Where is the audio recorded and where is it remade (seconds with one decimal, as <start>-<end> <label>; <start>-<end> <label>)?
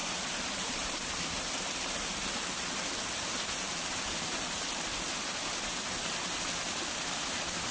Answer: 0.0-1.1 remade; 1.1-3.8 recorded; 3.8-4.8 remade; 4.8-7.7 recorded